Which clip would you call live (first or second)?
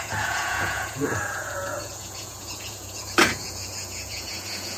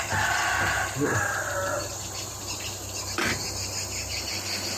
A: second